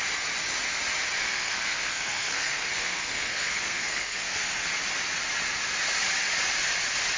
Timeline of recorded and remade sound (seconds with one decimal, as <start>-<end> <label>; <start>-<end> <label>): 0.0-1.2 recorded; 1.2-4.7 remade; 4.7-7.2 recorded

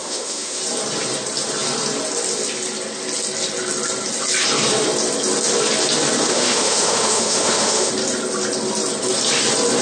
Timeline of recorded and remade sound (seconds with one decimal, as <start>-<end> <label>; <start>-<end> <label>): 0.0-0.6 remade; 0.6-6.3 recorded; 6.3-7.9 remade; 7.9-9.8 recorded

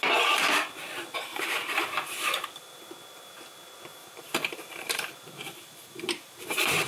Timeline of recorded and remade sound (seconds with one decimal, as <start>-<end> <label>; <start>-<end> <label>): 0.0-1.3 recorded; 1.3-2.8 remade; 2.8-4.0 recorded; 4.0-6.9 remade

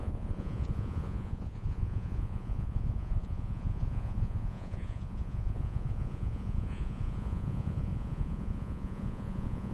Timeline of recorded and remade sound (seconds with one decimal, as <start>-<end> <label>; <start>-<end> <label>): 0.0-9.7 remade

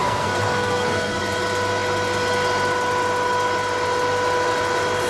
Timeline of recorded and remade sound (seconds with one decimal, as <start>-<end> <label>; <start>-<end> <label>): 0.0-1.2 remade; 1.2-5.1 recorded

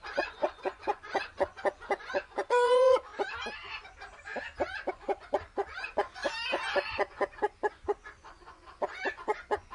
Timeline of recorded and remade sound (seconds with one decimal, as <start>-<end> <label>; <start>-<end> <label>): 0.0-3.1 remade; 3.1-4.9 recorded; 4.9-6.2 remade; 6.2-6.7 recorded; 6.7-9.7 remade

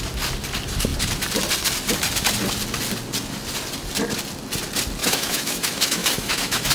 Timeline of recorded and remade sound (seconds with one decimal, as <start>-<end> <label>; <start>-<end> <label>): 0.0-5.0 recorded; 5.0-6.7 remade